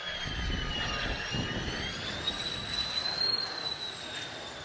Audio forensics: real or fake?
real